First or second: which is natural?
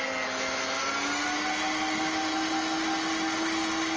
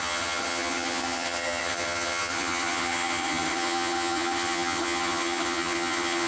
first